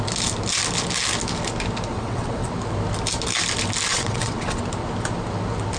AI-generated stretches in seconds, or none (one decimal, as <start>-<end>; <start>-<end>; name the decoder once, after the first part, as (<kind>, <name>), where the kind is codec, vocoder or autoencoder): 1.9-2.5 (vocoder, WaveNeXt); 3.9-4.6